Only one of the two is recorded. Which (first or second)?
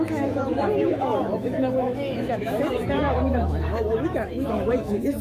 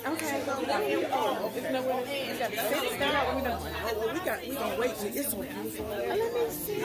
second